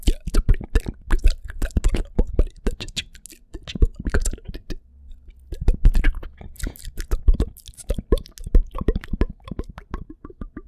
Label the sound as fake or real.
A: real